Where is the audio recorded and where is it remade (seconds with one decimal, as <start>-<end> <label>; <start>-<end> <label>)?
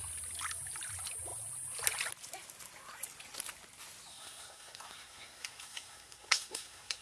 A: 0.0-4.1 recorded; 4.1-7.0 remade